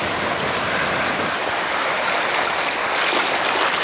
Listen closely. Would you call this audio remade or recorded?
recorded